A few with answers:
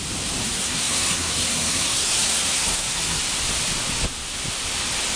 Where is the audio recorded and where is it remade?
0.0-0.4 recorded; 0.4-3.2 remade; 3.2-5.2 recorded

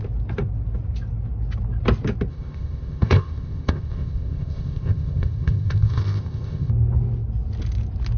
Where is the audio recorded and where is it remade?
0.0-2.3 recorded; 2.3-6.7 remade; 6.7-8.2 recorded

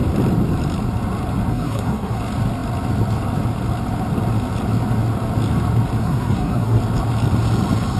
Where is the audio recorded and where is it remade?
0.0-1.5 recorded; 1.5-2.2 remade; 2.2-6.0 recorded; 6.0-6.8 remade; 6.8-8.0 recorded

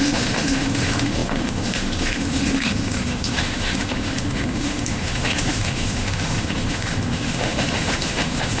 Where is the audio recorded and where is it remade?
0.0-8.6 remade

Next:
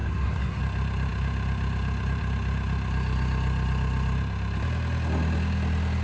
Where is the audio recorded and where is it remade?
0.0-0.6 remade; 0.6-6.0 recorded

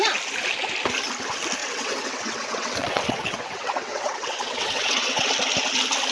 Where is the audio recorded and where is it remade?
0.0-1.6 recorded; 1.6-5.3 remade; 5.3-6.1 recorded

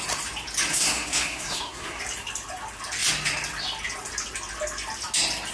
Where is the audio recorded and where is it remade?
0.0-0.7 recorded; 0.7-2.0 remade; 2.0-5.5 recorded

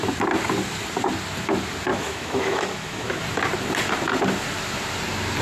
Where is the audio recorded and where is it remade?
0.0-1.9 recorded; 1.9-3.2 remade; 3.2-5.4 recorded